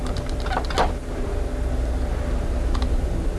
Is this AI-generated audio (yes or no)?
no